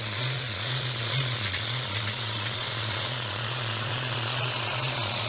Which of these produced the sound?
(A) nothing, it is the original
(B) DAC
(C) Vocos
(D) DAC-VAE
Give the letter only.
C